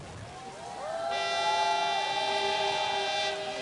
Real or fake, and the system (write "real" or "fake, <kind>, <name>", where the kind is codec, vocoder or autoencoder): real